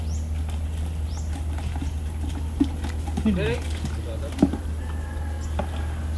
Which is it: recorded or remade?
recorded